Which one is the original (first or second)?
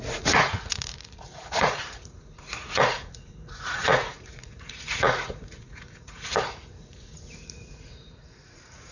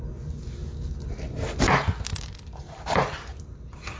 second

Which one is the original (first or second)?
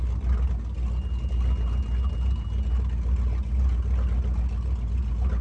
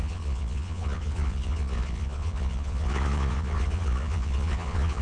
first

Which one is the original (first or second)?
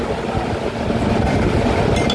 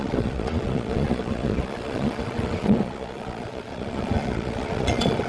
first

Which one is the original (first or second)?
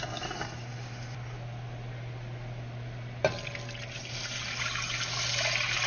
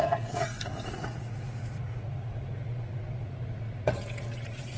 first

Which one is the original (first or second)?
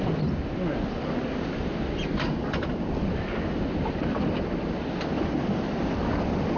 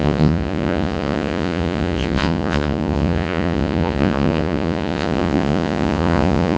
first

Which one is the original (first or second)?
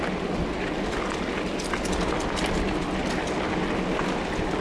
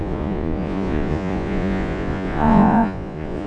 first